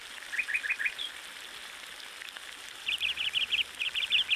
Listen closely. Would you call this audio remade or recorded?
remade